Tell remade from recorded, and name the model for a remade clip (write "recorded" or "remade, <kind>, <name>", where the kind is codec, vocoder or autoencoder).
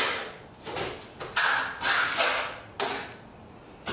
recorded